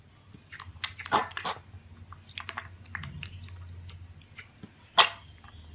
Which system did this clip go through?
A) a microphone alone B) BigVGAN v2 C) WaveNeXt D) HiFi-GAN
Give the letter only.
A